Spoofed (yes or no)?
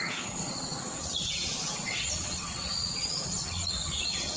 yes